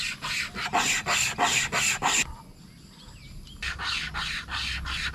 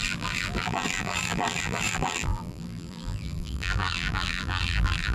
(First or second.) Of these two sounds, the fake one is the second